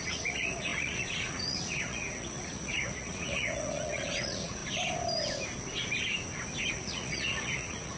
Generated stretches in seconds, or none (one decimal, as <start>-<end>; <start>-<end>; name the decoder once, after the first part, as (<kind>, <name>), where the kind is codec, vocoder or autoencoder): 0.0-4.6 (vocoder, Vocos); 6.7-8.0